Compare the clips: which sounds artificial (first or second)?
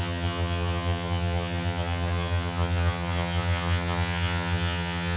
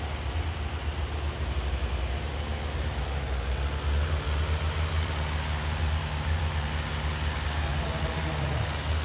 first